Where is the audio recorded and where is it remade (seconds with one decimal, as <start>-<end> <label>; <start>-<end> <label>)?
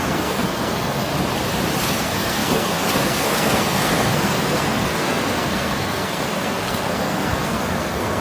0.0-1.1 remade; 1.1-1.8 recorded; 1.8-8.2 remade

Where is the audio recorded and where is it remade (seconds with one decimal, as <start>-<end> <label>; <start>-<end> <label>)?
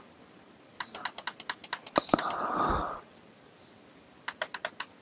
0.0-5.0 recorded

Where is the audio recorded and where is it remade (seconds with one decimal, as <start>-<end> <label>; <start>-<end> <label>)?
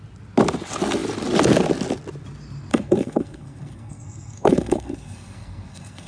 0.0-2.7 recorded; 2.7-6.1 remade